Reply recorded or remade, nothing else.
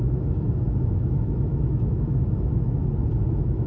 remade